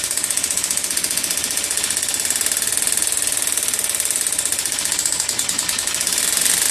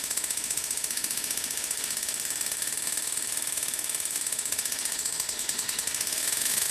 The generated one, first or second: second